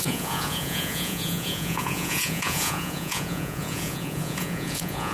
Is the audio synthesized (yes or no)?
yes